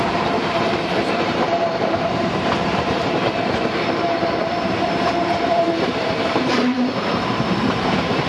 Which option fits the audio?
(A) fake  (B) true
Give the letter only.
A